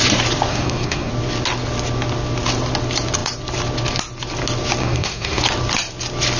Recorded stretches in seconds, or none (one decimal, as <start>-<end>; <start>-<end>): 0.0-0.5; 1.1-4.8; 5.4-6.4